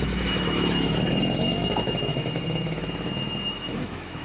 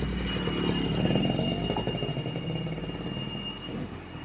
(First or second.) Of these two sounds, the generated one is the first